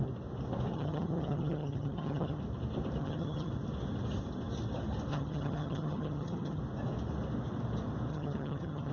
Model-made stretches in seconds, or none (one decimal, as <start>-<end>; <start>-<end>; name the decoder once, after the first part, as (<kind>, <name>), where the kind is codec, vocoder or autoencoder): 0.7-2.4 (vocoder, HiFi-GAN); 3.0-3.5; 5.1-6.6; 8.1-8.9